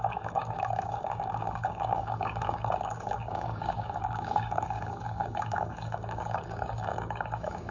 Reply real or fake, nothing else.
fake